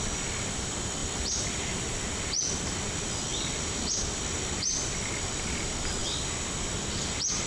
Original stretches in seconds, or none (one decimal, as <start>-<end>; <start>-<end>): 0.0-7.5